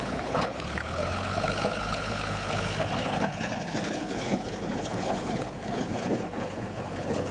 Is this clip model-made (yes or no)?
yes